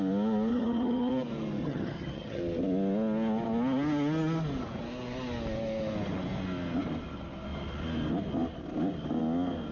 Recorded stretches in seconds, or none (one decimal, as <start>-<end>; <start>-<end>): 0.0-0.5; 1.1-1.6; 2.4-9.7